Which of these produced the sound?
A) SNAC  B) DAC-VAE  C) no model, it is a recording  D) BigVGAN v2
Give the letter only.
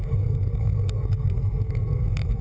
A